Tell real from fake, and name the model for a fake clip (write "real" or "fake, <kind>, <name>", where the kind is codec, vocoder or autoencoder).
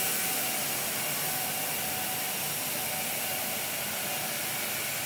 real